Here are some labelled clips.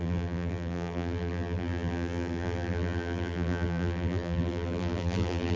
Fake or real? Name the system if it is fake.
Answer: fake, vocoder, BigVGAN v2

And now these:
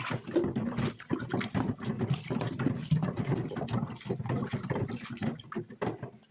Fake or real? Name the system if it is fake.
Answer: real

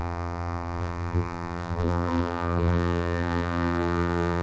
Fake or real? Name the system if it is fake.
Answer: fake, vocoder, BigVGAN v2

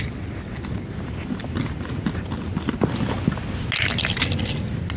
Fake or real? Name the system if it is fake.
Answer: real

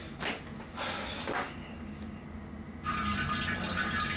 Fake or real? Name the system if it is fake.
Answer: real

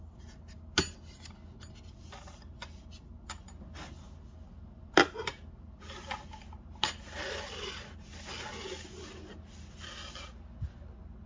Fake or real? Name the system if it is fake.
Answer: real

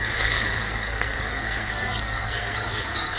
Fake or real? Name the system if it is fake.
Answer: fake, codec, SNAC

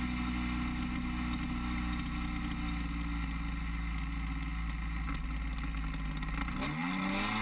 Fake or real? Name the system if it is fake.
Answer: real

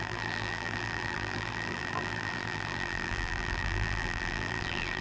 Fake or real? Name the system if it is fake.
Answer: fake, vocoder, BigVGAN v2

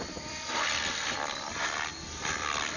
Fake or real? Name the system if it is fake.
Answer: fake, vocoder, BigVGAN v2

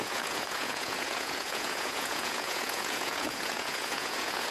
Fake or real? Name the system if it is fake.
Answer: fake, vocoder, Vocos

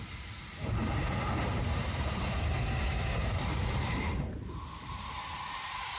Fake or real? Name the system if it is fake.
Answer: fake, vocoder, BigVGAN v2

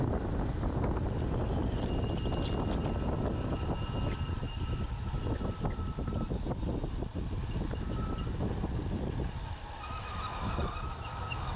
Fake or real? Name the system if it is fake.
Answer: real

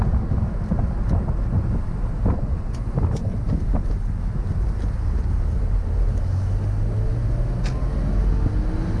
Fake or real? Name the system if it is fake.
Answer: real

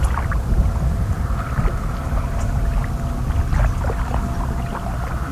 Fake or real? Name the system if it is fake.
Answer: real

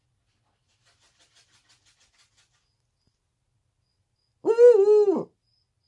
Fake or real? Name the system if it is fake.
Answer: real